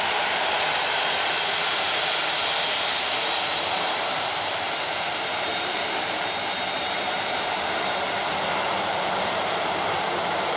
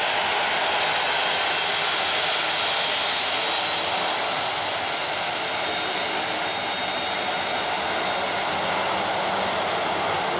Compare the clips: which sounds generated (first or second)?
first